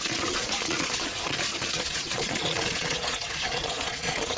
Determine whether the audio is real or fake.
fake